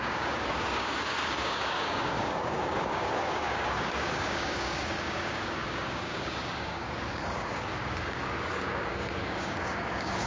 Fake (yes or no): yes